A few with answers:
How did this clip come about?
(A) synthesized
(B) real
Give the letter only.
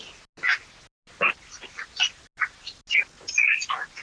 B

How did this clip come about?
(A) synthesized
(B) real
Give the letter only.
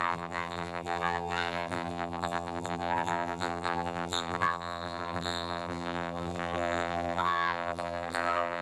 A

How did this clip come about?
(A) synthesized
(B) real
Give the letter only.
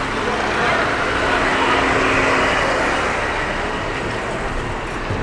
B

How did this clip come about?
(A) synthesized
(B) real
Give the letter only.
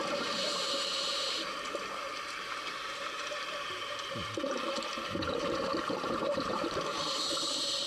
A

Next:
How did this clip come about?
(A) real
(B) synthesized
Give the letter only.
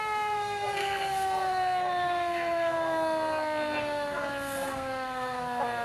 B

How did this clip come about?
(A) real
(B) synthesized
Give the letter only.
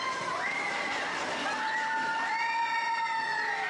A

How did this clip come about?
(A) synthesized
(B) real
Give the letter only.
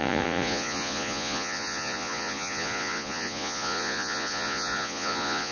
A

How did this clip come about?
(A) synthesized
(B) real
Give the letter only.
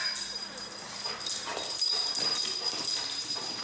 B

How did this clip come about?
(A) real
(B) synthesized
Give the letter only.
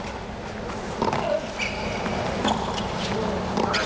A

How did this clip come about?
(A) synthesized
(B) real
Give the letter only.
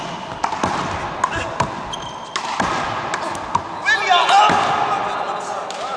B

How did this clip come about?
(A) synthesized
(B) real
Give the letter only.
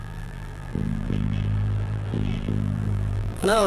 A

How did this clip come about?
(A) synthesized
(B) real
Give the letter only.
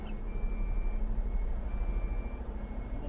B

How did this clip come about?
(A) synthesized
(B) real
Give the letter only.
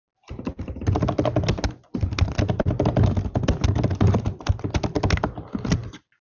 B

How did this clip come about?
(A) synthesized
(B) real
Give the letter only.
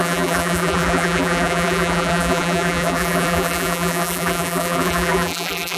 A